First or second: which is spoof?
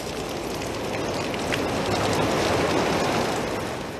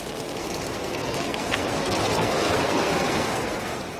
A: second